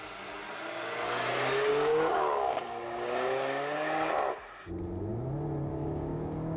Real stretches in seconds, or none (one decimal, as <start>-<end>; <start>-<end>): 0.0-1.7; 4.1-5.7